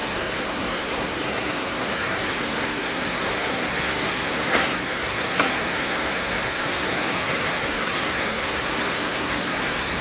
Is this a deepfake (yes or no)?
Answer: yes